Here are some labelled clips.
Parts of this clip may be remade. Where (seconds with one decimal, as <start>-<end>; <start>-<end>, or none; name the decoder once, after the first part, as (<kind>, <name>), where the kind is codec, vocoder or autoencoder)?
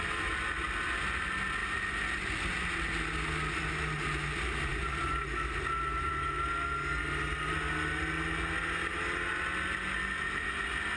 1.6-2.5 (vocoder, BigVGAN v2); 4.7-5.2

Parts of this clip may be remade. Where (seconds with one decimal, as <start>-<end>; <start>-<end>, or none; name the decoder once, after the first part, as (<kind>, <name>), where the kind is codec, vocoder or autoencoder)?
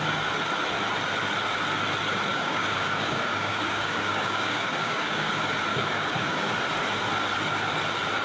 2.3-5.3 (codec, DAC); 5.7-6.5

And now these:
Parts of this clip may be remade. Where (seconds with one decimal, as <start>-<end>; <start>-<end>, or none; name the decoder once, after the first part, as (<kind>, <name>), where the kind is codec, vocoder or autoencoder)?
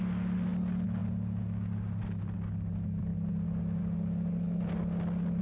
none